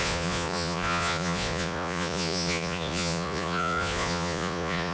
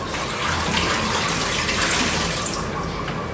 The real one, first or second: second